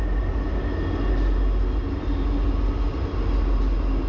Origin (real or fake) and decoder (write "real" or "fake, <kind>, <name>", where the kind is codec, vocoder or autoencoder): real